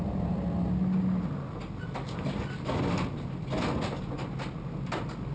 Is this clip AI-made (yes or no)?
no